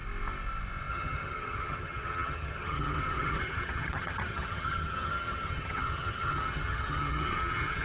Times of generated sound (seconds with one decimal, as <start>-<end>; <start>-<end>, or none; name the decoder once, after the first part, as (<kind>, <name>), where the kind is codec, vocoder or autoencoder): 0.9-7.8 (vocoder, HiFi-GAN)